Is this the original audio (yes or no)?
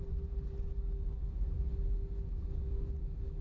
yes